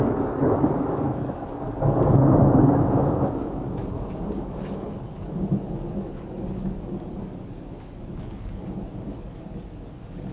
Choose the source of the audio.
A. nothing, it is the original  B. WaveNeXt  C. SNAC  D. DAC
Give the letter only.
D